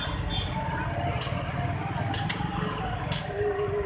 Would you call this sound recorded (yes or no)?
yes